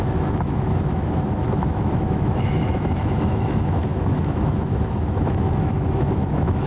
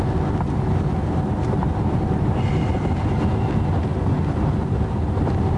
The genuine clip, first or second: second